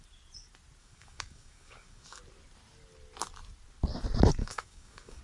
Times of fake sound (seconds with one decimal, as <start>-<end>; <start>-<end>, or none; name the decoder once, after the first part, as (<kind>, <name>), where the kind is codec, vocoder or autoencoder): 0.8-2.2 (codec, DAC); 4.4-5.2